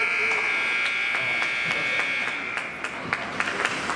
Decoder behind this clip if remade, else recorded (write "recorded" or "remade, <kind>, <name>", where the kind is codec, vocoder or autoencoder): recorded